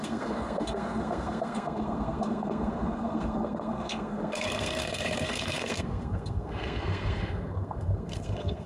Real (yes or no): no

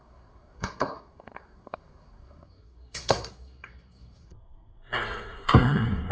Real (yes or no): no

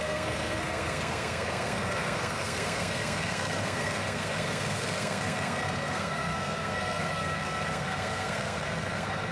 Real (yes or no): no